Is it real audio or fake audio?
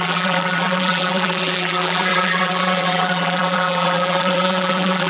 fake